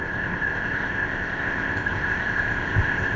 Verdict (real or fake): fake